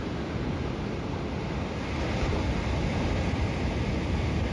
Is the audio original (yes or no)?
yes